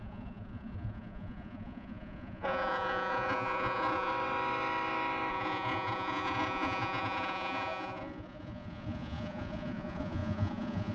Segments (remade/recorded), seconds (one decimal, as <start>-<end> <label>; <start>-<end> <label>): 0.0-4.1 remade; 4.1-5.3 recorded; 5.3-10.9 remade